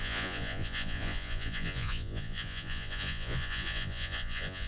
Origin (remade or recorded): remade